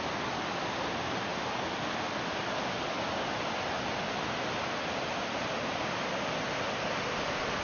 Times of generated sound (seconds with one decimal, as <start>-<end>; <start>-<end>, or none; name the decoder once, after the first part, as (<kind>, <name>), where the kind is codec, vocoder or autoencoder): none